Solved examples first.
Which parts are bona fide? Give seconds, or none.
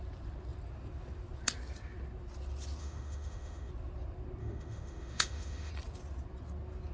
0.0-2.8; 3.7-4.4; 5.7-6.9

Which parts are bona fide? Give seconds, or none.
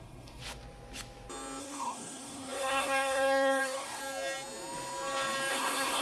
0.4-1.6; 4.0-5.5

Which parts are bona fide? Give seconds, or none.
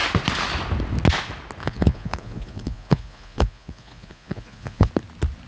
0.0-1.6; 4.9-5.5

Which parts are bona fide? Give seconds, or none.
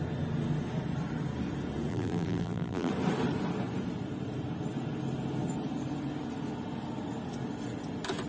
0.0-1.9; 2.9-8.3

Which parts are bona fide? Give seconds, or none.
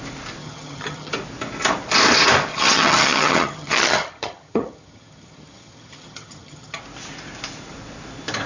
0.0-0.4; 1.1-2.5; 6.8-8.5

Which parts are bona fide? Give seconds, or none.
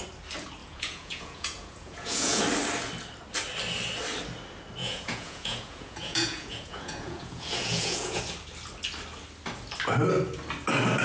0.0-0.6; 2.4-4.8; 8.2-11.0